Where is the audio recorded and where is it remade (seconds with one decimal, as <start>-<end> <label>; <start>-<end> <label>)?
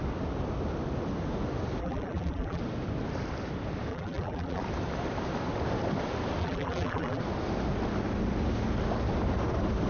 0.0-1.8 recorded; 1.8-2.6 remade; 2.6-3.9 recorded; 3.9-4.6 remade; 4.6-6.4 recorded; 6.4-7.2 remade; 7.2-9.9 recorded